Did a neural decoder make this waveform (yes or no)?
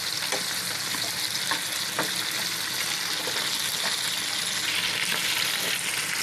no